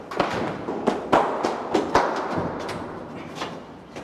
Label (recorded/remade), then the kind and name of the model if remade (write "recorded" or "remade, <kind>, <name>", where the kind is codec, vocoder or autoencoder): recorded